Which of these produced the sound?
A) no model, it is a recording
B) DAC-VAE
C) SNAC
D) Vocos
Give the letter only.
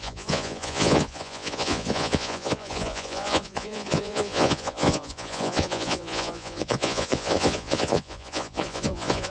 D